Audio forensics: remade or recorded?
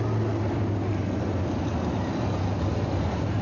recorded